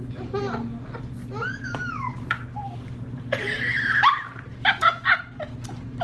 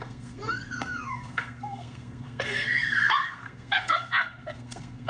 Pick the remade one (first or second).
second